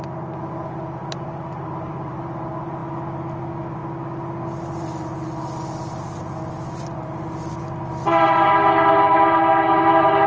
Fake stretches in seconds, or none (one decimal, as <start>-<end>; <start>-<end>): 1.0-2.1